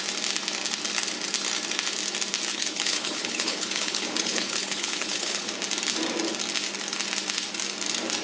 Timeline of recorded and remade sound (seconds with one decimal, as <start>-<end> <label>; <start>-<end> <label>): 0.0-2.5 recorded; 2.5-5.5 remade; 5.5-8.2 recorded